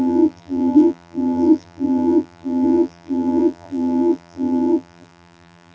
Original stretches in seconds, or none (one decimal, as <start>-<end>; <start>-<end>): none